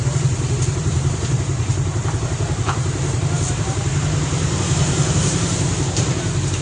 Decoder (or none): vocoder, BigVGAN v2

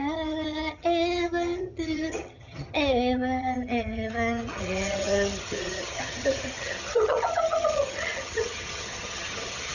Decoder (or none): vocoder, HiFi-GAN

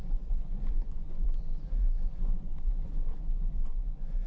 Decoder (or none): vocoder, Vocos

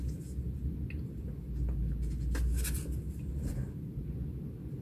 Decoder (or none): none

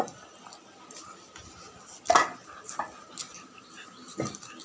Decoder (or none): none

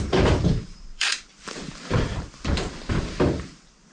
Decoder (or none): vocoder, BigVGAN v2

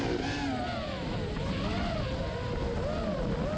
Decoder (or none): none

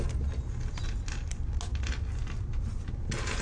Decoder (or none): none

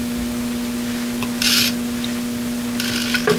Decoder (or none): none